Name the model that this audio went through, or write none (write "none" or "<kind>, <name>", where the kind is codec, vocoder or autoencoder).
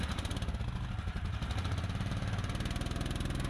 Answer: none